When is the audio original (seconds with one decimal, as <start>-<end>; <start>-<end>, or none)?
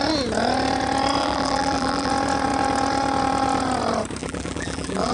0.0-1.2; 2.1-4.2